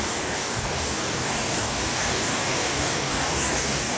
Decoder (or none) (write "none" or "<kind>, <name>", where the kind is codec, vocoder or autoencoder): codec, DAC